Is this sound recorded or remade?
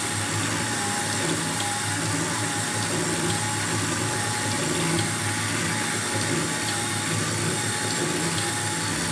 recorded